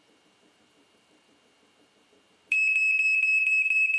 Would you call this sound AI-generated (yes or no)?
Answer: yes